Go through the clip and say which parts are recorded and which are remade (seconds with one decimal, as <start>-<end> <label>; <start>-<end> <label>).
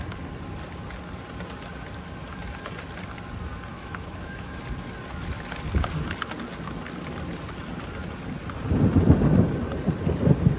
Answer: 0.0-3.7 recorded; 3.7-4.6 remade; 4.6-10.6 recorded